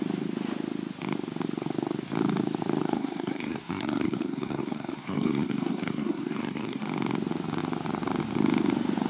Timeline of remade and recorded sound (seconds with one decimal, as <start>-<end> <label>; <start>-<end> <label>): 0.0-2.8 recorded; 2.8-6.8 remade; 6.8-9.1 recorded